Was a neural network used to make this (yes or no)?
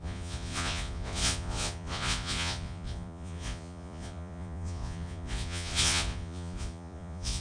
yes